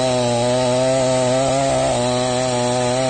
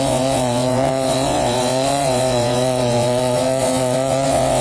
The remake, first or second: second